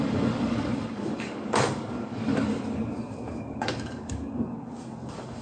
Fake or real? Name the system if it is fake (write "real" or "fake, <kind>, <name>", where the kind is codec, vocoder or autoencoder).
fake, codec, DAC